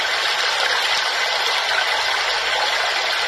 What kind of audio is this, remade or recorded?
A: recorded